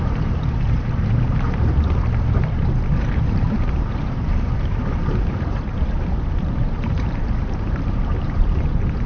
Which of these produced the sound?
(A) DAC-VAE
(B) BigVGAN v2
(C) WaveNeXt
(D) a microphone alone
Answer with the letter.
B